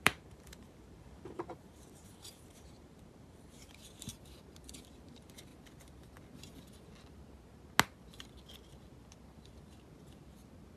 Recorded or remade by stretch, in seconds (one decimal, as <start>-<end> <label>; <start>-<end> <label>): 0.0-4.1 remade; 4.1-4.8 recorded; 4.8-5.5 remade; 5.5-10.8 recorded